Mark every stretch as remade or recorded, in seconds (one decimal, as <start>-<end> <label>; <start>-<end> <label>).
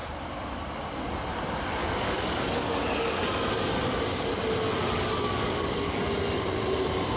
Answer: 0.0-1.8 recorded; 1.8-3.2 remade; 3.2-4.8 recorded; 4.8-6.0 remade; 6.0-7.2 recorded